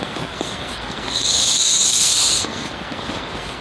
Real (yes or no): no